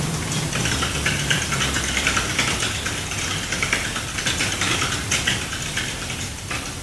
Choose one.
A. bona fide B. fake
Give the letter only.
B